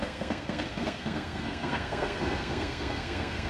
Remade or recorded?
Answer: remade